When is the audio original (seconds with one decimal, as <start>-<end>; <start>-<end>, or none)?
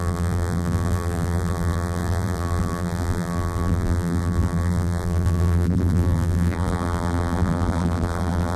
none